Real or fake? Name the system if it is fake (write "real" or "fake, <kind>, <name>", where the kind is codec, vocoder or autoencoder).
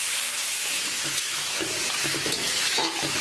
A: fake, autoencoder, DAC-VAE